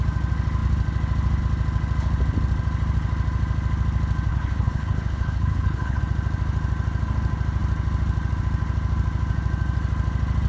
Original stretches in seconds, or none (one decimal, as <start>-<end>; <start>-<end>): 0.0-4.3; 6.0-10.5